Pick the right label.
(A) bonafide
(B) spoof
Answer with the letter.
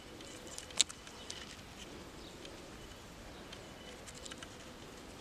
A